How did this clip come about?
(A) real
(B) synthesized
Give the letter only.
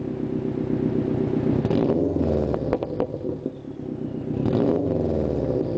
A